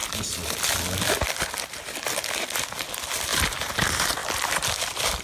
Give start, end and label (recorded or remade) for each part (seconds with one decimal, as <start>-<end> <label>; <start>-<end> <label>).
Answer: 0.0-2.5 recorded; 2.5-3.3 remade; 3.3-3.8 recorded; 3.8-5.2 remade